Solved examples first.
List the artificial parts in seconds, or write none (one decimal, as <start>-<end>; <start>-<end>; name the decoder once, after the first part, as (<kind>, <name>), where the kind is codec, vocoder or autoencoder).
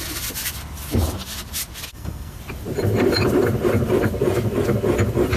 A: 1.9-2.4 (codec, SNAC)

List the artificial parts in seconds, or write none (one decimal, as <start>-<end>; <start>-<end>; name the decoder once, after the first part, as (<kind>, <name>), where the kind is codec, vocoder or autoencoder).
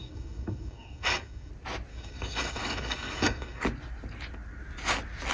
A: 0.0-1.5 (codec, DAC); 1.9-3.6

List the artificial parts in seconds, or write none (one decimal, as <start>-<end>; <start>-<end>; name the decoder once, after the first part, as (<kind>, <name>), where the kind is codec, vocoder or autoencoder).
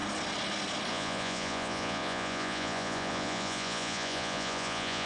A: 0.9-5.1 (vocoder, Vocos)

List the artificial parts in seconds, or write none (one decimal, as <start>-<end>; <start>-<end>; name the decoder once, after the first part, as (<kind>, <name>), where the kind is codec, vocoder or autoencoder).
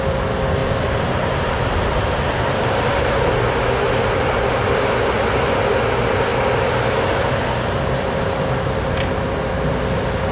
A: 0.6-3.5 (vocoder, BigVGAN v2)